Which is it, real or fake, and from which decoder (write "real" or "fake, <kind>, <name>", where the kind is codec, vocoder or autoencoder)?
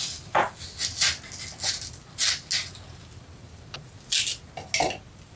real